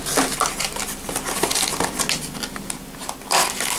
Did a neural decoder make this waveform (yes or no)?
no